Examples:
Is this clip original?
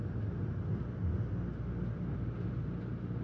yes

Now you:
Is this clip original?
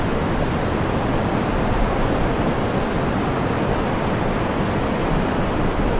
yes